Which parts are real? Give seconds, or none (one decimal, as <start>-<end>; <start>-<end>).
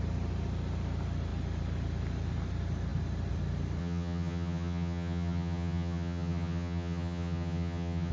0.0-3.8